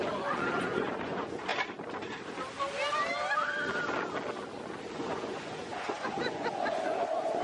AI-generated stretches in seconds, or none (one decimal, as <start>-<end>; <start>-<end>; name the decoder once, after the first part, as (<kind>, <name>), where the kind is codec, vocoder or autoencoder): 0.0-1.5 (vocoder, Vocos); 4.9-7.4